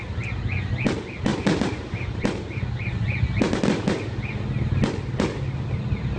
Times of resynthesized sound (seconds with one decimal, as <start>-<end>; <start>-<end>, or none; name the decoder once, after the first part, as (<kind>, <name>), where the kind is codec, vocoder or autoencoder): 1.3-2.2 (vocoder, BigVGAN v2)